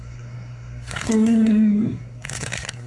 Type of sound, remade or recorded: remade